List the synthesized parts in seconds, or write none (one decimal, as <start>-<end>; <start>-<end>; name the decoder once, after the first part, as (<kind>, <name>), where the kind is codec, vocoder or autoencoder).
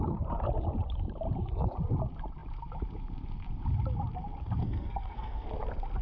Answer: 4.6-5.5 (codec, SNAC)